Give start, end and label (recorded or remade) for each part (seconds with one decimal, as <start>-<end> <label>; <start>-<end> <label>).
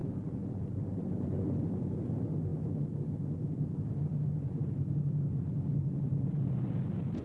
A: 0.0-2.1 remade; 2.1-7.2 recorded